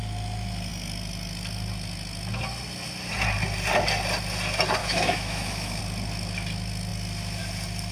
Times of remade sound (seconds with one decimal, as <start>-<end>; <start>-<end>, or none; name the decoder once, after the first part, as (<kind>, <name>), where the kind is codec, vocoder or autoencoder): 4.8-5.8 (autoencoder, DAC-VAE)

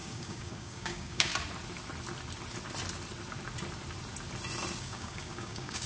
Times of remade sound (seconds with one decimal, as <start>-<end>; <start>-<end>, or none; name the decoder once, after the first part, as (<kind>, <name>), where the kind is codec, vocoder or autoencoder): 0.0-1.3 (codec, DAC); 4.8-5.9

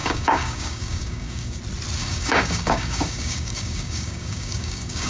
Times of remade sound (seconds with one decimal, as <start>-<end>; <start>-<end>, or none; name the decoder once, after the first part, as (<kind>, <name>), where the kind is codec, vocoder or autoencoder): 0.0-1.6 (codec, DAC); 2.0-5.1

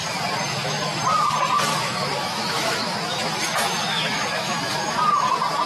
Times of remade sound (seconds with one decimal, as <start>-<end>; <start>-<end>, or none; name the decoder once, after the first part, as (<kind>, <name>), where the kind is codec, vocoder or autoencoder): 0.5-1.0 (autoencoder, DAC-VAE); 1.7-5.0